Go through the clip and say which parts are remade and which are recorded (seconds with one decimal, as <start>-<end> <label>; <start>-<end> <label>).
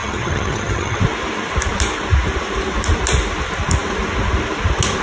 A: 0.0-1.0 remade; 1.0-5.0 recorded